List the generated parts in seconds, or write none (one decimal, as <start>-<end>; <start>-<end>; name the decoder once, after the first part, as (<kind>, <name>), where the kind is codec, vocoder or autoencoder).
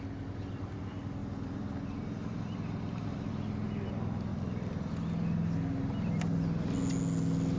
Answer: 1.2-3.3 (vocoder, BigVGAN v2); 4.3-4.9